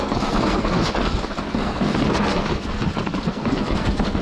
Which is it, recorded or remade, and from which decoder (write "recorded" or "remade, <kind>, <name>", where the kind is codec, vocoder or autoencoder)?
remade, codec, SNAC